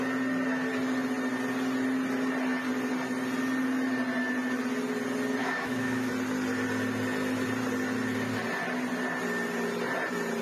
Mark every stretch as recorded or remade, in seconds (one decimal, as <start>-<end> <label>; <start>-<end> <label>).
0.0-5.4 recorded; 5.4-6.1 remade; 6.1-10.4 recorded